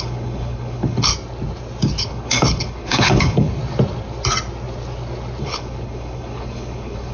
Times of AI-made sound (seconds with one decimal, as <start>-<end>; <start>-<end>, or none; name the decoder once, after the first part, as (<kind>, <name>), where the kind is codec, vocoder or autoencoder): 0.0-1.1 (codec, HILCodec); 2.0-3.6; 5.4-7.1